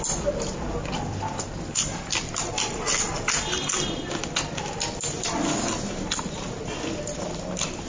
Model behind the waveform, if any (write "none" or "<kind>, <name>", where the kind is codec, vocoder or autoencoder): vocoder, BigVGAN v2